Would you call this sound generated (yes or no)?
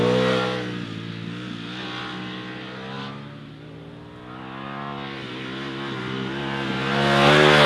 no